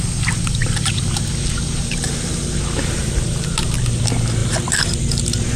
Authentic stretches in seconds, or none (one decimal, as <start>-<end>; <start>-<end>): 0.0-0.6; 1.3-3.0; 4.0-4.4; 5.0-5.6